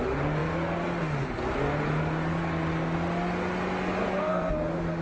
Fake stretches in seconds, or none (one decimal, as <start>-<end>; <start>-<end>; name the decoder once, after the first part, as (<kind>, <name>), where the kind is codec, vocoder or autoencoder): 4.0-4.5 (codec, SNAC)